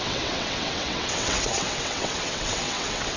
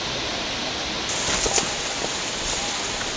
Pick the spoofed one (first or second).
first